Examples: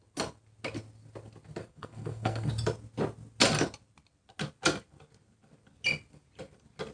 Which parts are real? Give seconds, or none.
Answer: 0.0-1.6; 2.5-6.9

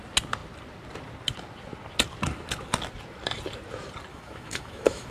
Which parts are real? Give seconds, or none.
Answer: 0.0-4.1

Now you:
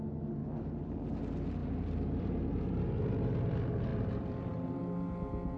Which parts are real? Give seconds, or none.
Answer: 0.0-0.4; 1.1-1.6; 2.8-3.9; 4.8-5.6